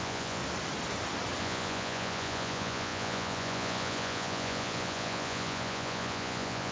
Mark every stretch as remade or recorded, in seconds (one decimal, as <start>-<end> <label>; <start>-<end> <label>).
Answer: 0.0-0.4 remade; 0.4-1.4 recorded; 1.4-6.7 remade